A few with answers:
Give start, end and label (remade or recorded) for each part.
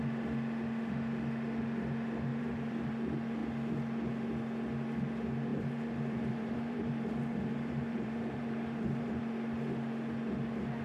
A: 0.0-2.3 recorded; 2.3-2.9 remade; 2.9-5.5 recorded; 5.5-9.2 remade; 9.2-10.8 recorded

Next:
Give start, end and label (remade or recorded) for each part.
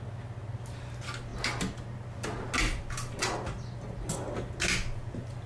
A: 0.0-5.5 recorded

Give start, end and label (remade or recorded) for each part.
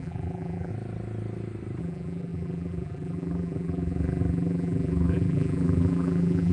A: 0.0-0.7 remade; 0.7-1.8 recorded; 1.8-6.5 remade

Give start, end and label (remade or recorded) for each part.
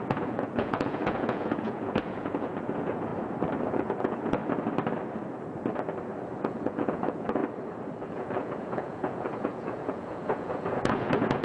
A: 0.0-3.1 remade; 3.1-3.7 recorded; 3.7-4.4 remade; 4.4-6.4 recorded; 6.4-7.4 remade; 7.4-8.1 recorded; 8.1-11.4 remade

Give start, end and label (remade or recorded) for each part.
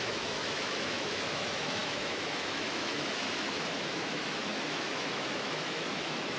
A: 0.0-6.4 remade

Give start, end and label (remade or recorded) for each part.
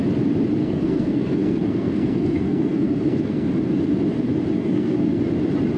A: 0.0-0.6 recorded; 0.6-3.5 remade; 3.5-4.6 recorded; 4.6-5.2 remade; 5.2-5.8 recorded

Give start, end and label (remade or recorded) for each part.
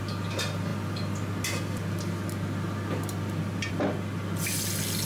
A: 0.0-5.1 recorded